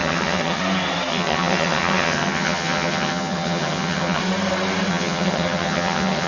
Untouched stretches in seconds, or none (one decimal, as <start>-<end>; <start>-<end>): 0.6-1.1; 4.2-4.9